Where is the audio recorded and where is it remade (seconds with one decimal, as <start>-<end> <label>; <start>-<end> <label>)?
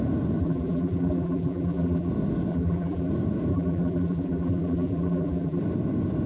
0.0-0.4 recorded; 0.4-2.1 remade; 2.1-2.5 recorded; 2.5-3.1 remade; 3.1-3.5 recorded; 3.5-5.6 remade; 5.6-6.3 recorded